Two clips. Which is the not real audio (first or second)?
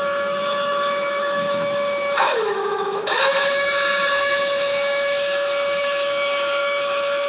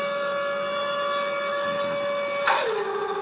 first